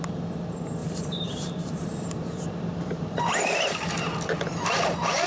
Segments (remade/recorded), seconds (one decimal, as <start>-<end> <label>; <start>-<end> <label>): 0.0-0.8 recorded; 0.8-4.0 remade; 4.0-5.3 recorded